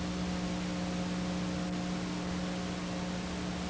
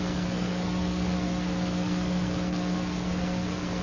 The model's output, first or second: second